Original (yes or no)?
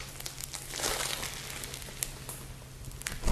yes